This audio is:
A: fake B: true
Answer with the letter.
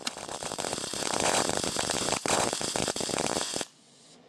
A